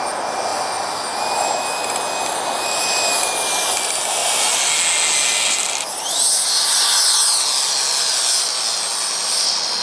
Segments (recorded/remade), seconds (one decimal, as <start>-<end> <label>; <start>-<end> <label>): 0.0-9.8 recorded